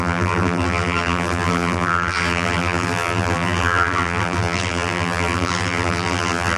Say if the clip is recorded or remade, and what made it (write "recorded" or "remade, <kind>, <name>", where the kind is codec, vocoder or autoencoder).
remade, vocoder, BigVGAN v2